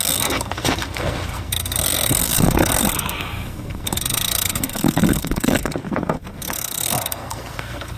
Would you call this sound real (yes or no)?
no